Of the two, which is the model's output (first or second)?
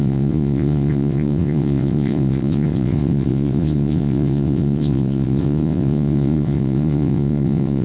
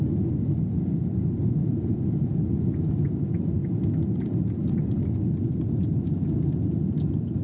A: first